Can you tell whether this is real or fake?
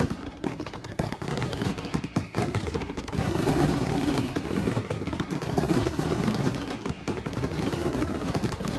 fake